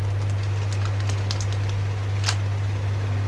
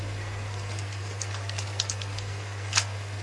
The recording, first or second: first